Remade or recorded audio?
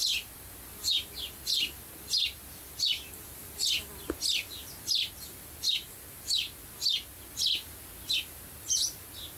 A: recorded